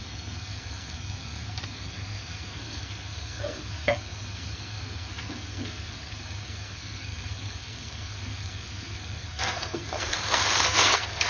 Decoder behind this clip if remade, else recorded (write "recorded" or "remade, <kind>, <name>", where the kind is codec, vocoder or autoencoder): remade, codec, SNAC